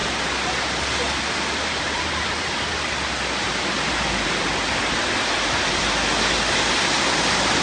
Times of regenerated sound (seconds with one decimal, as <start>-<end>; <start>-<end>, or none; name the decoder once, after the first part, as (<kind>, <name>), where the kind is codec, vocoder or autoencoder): none

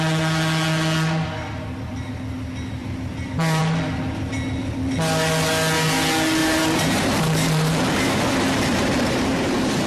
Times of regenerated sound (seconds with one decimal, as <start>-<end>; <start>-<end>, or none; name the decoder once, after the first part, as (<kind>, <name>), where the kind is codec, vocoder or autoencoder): 2.8-3.6 (vocoder, BigVGAN v2); 6.4-9.9

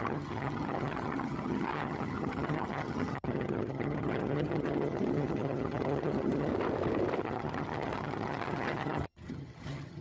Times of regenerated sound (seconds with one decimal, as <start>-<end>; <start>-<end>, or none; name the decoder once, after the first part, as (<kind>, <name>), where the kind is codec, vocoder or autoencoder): 0.0-6.5 (vocoder, HiFi-GAN); 7.2-10.0